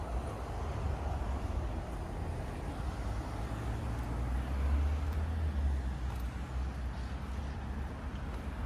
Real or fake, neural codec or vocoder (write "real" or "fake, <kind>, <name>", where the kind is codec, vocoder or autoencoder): real